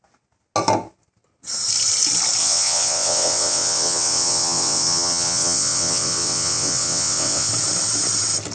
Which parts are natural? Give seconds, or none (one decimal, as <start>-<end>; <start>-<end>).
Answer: 0.0-2.4; 7.5-8.5